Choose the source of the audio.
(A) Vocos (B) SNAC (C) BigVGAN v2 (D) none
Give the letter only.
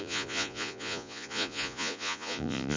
A